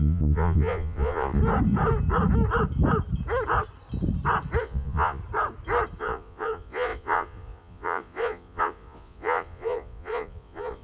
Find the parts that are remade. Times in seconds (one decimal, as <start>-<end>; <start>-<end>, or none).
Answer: 0.0-1.4; 4.6-5.2; 6.0-10.8